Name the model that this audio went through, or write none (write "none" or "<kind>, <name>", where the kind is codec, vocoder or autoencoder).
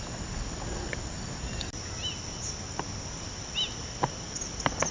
none